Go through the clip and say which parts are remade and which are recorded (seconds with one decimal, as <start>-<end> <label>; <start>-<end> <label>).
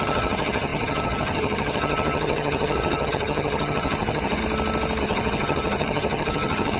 0.0-4.4 remade; 4.4-5.0 recorded; 5.0-6.8 remade